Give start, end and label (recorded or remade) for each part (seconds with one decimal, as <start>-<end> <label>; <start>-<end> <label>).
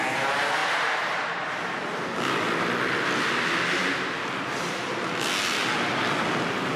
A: 0.0-0.6 recorded; 0.6-1.5 remade; 1.5-6.8 recorded